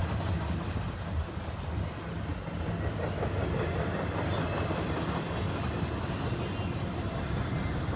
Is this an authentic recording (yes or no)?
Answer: yes